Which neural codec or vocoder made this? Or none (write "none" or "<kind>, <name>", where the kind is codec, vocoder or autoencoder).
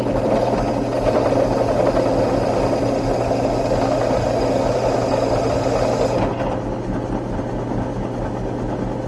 none